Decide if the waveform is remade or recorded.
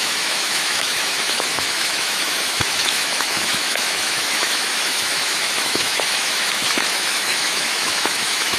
remade